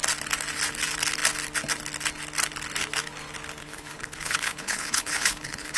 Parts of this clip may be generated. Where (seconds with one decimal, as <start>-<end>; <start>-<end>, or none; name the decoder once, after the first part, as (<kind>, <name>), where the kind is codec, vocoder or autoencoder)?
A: 3.6-5.8 (codec, HILCodec)